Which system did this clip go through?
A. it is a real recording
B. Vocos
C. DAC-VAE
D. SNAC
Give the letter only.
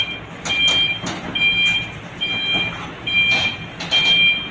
A